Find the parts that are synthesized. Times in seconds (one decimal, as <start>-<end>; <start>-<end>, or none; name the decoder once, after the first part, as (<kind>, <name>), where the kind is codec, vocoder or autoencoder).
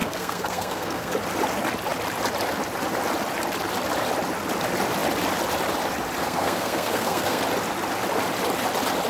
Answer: 0.0-1.1 (codec, SNAC); 6.2-7.4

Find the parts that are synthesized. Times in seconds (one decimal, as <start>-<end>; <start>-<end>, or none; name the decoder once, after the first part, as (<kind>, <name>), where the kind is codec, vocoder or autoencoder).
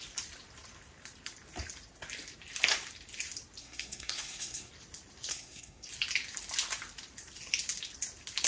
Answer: 3.6-4.7 (codec, SNAC); 5.3-5.9